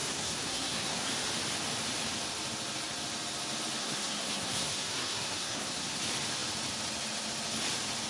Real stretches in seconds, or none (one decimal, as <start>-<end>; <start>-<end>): 1.1-3.8; 6.0-8.1